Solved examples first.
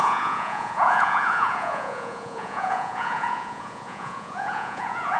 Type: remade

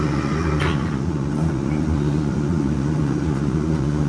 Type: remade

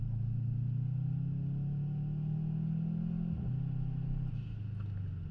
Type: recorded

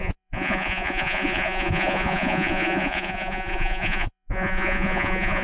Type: remade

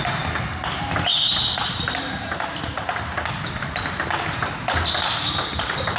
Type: recorded